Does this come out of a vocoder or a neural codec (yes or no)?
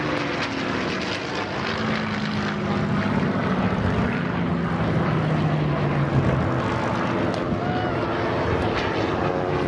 no